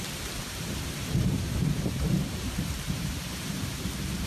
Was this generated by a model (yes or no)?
yes